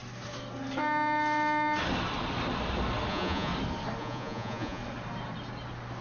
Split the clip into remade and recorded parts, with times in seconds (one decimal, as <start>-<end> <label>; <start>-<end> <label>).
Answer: 0.0-3.1 recorded; 3.1-3.5 remade; 3.5-4.0 recorded; 4.0-4.8 remade; 4.8-6.0 recorded